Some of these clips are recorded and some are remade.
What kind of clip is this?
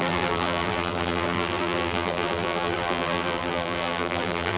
remade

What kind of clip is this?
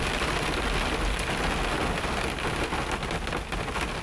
recorded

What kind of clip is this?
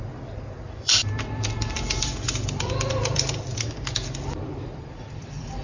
remade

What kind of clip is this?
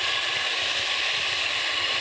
recorded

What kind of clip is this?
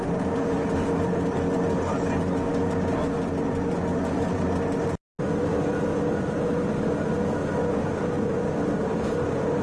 recorded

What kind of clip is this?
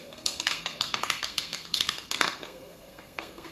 remade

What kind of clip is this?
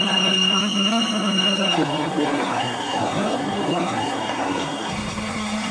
remade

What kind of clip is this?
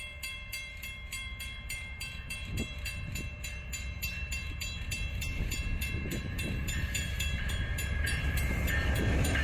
remade